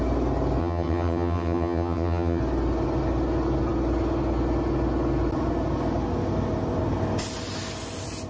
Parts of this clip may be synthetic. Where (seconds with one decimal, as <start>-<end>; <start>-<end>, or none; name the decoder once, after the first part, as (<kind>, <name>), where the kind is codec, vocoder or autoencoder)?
0.6-2.4 (vocoder, HiFi-GAN)